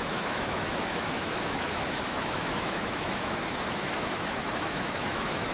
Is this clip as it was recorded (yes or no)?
no